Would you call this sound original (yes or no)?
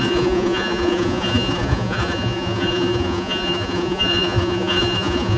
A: no